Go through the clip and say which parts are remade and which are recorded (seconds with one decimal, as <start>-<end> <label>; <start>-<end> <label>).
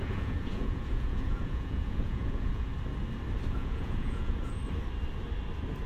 0.0-2.7 remade; 2.7-3.5 recorded; 3.5-4.6 remade; 4.6-5.9 recorded